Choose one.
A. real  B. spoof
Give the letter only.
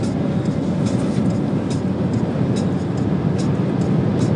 A